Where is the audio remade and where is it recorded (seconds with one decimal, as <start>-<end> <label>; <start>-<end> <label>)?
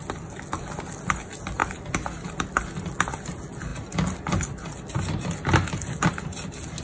0.0-6.8 recorded